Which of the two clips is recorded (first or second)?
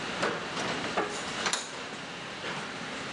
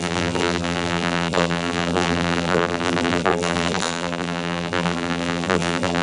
first